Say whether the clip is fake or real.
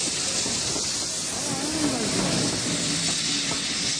real